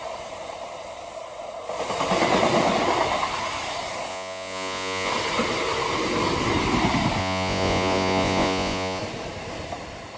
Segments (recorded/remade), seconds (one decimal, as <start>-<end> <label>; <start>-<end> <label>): 0.0-4.1 recorded; 4.1-5.1 remade; 5.1-7.2 recorded; 7.2-9.0 remade; 9.0-10.2 recorded